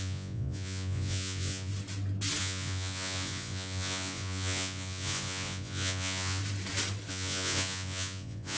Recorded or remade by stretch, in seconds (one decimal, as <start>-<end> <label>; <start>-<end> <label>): 0.0-1.7 remade; 1.7-2.4 recorded; 2.4-6.4 remade; 6.4-7.1 recorded; 7.1-8.6 remade